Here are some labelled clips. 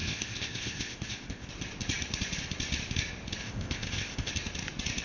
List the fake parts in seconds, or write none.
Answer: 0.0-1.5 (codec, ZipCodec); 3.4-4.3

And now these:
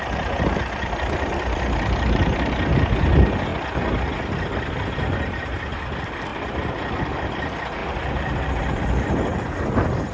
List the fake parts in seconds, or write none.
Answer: 7.8-9.2 (vocoder, BigVGAN v2)

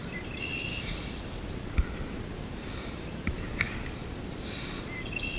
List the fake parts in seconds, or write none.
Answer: 0.0-4.0 (vocoder, BigVGAN v2); 4.8-5.4

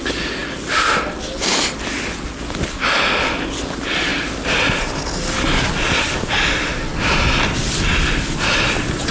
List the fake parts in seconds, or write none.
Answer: none

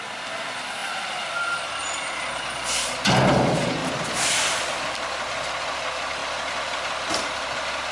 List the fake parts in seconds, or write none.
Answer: 0.8-1.7 (vocoder, BigVGAN v2); 3.8-5.5; 6.2-7.5

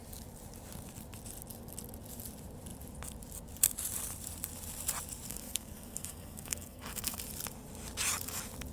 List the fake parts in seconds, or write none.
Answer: 5.3-7.2 (codec, SNAC)

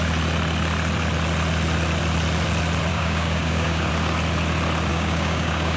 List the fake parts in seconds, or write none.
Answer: 2.9-3.9 (codec, DAC); 4.9-5.8

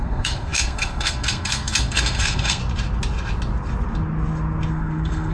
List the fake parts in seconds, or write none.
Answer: 0.0-2.6 (codec, SNAC); 4.7-5.3